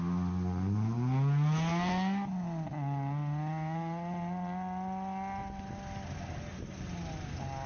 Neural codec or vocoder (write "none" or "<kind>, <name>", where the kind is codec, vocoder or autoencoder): none